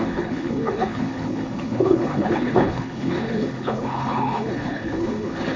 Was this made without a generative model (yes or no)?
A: no